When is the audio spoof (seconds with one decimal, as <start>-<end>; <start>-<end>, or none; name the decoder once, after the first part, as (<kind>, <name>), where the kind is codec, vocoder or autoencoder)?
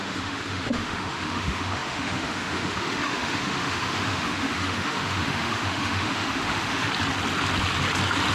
0.0-6.9 (autoencoder, DAC-VAE)